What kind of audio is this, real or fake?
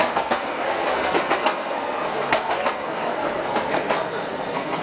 fake